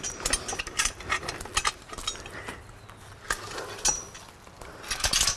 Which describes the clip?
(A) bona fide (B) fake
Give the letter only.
A